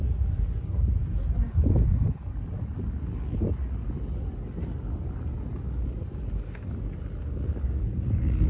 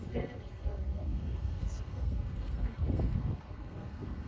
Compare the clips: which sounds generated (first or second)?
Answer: second